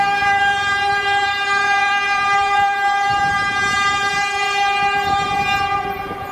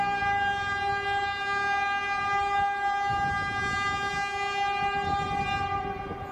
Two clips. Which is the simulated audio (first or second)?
first